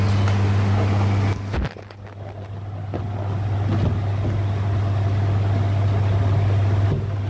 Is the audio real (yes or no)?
yes